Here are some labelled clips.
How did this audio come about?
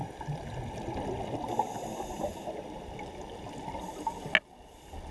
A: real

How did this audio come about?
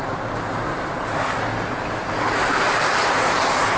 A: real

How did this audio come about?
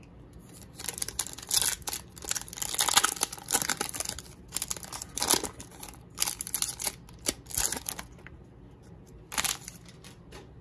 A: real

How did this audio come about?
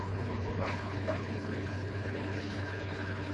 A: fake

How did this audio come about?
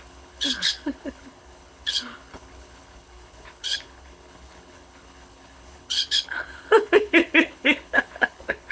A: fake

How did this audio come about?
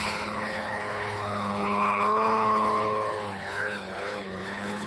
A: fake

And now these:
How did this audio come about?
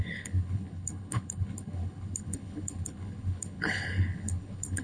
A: fake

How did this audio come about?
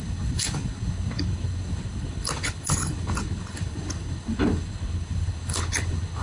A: fake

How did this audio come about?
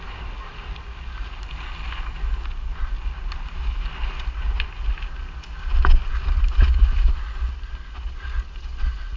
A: real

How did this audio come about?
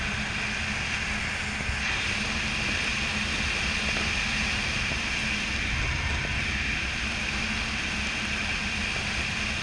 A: real